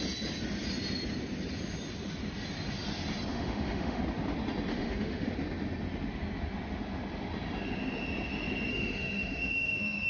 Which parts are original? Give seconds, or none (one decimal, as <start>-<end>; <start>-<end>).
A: 0.0-3.3; 4.0-4.7; 5.3-8.7